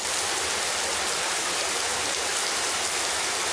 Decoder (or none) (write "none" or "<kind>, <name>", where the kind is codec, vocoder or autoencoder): none